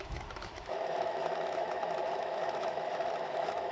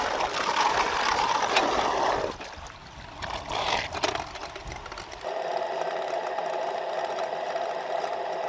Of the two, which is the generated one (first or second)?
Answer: first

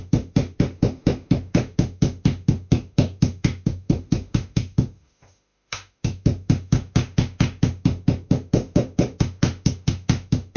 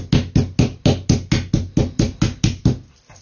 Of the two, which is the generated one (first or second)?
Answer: first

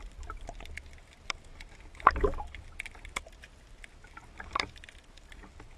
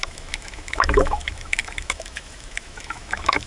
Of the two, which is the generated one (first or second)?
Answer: second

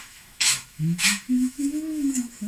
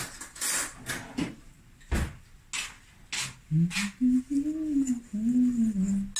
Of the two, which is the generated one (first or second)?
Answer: first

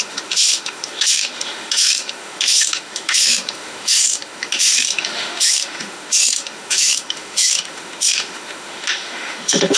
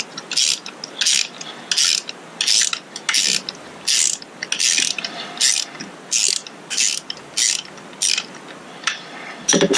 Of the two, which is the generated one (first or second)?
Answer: first